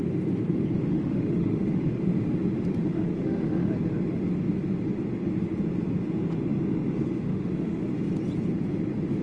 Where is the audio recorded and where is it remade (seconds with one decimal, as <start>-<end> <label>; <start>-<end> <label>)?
0.0-0.9 recorded; 0.9-2.0 remade; 2.0-2.9 recorded; 2.9-3.7 remade; 3.7-7.3 recorded; 7.3-7.8 remade; 7.8-9.2 recorded